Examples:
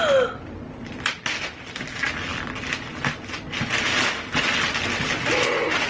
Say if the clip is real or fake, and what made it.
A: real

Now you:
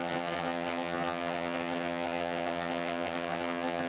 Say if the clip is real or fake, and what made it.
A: fake, vocoder, HiFi-GAN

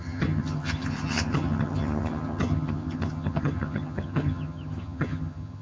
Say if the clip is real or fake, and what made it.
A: fake, vocoder, HiFi-GAN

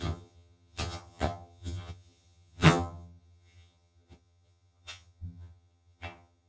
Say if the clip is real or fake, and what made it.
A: fake, vocoder, HiFi-GAN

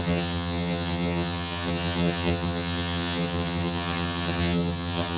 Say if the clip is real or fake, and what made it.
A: fake, vocoder, HiFi-GAN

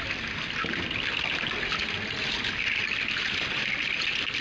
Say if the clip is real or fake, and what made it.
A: real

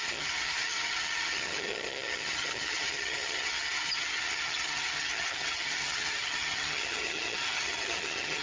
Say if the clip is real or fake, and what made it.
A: fake, vocoder, HiFi-GAN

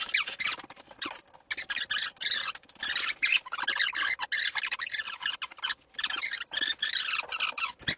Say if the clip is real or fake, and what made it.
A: real